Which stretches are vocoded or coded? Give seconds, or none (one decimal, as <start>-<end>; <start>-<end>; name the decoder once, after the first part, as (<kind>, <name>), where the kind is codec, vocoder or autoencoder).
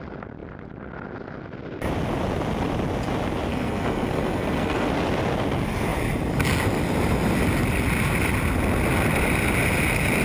3.5-4.9 (codec, SNAC)